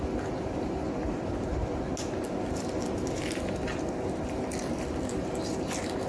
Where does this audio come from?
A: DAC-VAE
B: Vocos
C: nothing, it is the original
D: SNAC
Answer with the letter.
C